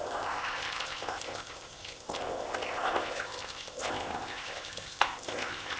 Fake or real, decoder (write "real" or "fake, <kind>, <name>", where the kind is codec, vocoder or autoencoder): fake, codec, ZipCodec